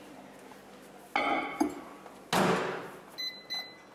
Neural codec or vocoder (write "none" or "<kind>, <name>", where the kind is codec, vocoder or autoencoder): none